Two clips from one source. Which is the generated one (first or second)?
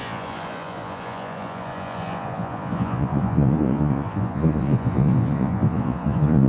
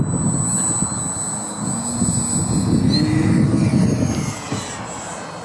first